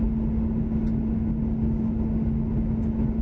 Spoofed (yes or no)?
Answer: no